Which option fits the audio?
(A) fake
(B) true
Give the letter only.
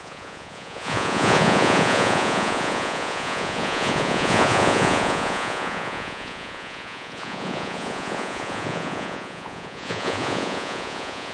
A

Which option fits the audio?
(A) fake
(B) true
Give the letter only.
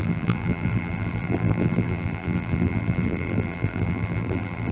A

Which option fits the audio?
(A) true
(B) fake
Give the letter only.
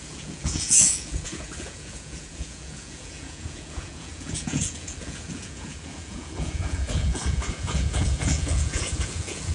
B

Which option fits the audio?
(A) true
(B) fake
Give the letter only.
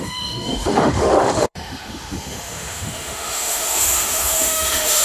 B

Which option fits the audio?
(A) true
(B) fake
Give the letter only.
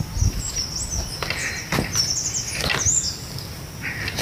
A